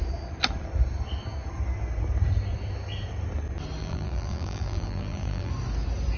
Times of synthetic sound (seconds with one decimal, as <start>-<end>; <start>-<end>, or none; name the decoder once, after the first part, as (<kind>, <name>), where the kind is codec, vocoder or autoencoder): 3.8-5.5 (vocoder, BigVGAN v2)